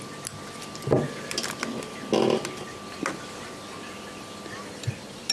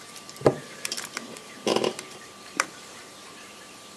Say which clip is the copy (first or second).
second